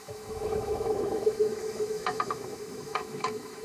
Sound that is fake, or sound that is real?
fake